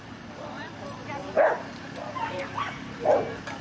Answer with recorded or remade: recorded